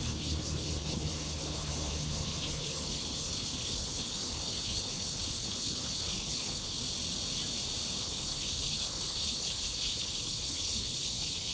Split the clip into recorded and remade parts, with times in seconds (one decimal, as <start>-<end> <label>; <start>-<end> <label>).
0.0-6.8 remade; 6.8-8.0 recorded; 8.0-11.5 remade